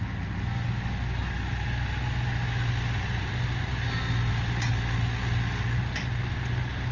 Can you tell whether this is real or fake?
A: real